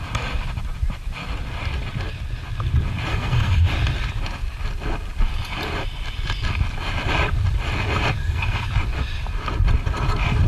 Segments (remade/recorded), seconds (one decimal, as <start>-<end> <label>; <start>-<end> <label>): 0.0-3.1 recorded; 3.1-3.7 remade; 3.7-8.2 recorded; 8.2-8.7 remade; 8.7-10.5 recorded

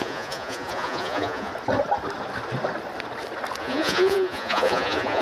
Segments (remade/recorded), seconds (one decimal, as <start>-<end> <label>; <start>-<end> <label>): 0.0-1.5 remade; 1.5-3.6 recorded; 3.6-5.2 remade